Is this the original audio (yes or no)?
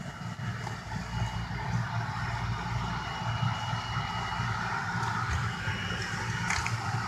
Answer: yes